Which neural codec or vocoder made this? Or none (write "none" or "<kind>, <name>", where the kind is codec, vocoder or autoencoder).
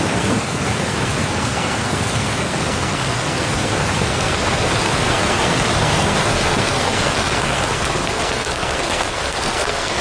codec, SNAC